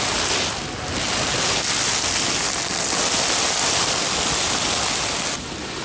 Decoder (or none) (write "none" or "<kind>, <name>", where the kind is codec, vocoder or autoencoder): none